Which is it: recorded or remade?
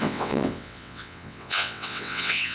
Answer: remade